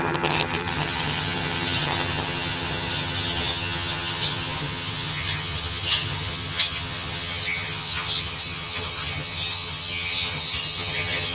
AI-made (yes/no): yes